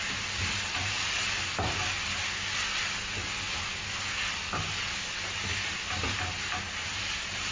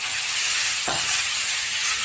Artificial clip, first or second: second